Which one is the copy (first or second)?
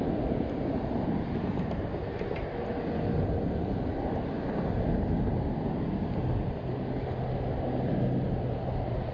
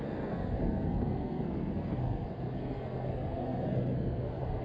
second